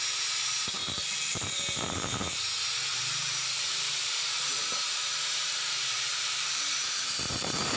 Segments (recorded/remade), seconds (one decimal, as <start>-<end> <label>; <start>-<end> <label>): 0.0-0.8 recorded; 0.8-1.5 remade; 1.5-2.9 recorded; 2.9-7.8 remade